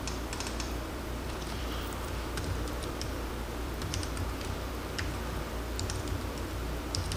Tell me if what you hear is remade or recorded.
remade